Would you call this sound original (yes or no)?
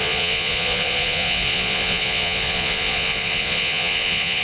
no